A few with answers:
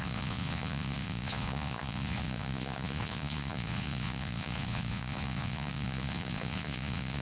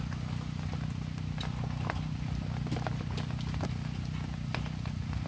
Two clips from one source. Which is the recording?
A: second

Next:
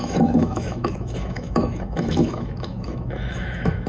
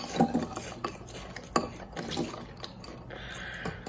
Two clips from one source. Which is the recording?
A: second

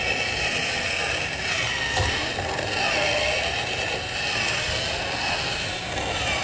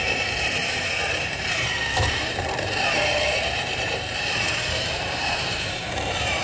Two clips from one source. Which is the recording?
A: first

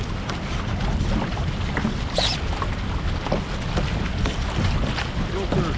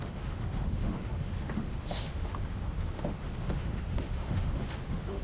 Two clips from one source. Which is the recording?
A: first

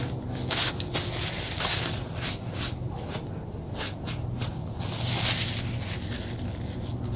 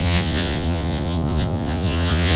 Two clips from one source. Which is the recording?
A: first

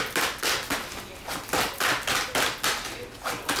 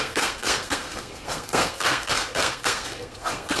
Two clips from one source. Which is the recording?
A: first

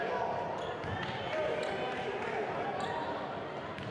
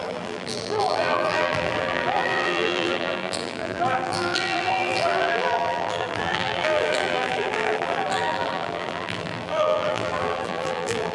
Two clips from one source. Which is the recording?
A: first